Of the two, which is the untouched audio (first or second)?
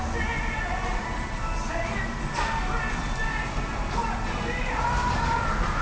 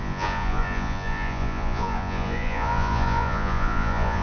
first